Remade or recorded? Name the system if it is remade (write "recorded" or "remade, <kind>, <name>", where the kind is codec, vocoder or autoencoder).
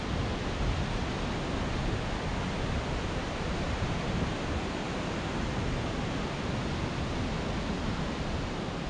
recorded